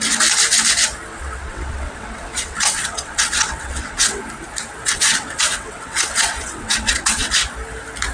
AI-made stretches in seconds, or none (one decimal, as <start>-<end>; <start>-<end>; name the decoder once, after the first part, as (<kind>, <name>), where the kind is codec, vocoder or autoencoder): 1.1-4.2 (vocoder, WaveNeXt); 4.8-7.3